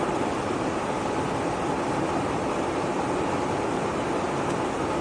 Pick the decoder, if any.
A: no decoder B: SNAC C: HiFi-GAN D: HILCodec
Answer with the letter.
A